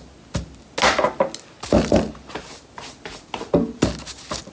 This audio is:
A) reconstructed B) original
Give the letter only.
B